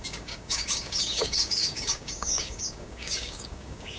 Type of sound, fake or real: fake